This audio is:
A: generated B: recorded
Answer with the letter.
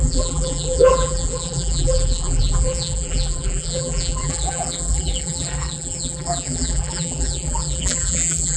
A